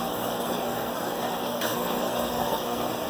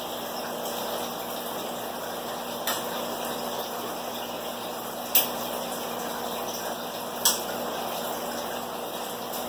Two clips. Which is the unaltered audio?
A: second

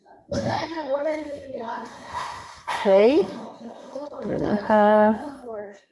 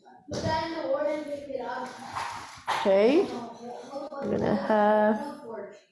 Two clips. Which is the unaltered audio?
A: second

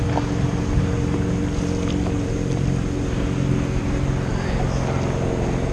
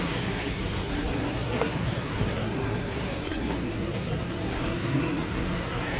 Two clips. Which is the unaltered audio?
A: first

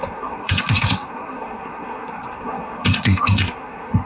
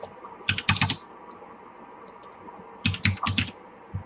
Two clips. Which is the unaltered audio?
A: second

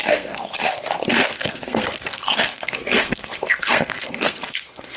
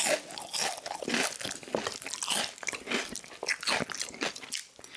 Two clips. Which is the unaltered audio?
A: second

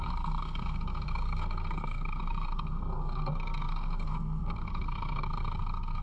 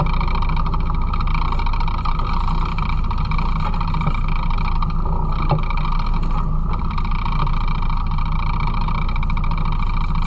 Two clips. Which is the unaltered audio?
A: second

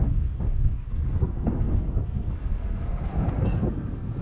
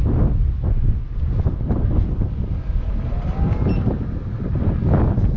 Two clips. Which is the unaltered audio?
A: second